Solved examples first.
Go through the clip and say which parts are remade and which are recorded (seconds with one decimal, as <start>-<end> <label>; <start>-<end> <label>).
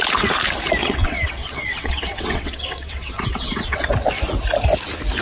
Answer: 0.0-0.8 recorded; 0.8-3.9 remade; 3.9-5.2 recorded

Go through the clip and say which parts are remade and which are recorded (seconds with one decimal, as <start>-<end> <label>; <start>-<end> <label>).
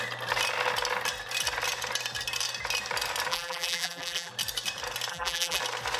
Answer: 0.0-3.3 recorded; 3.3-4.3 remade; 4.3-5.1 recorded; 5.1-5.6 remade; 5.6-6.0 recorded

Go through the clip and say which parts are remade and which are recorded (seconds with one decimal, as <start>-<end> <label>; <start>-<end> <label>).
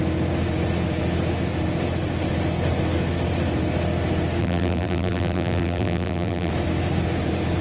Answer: 0.0-4.4 recorded; 4.4-6.5 remade; 6.5-7.6 recorded